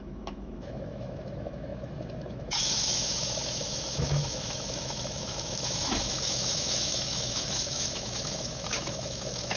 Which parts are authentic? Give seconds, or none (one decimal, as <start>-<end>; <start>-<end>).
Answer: none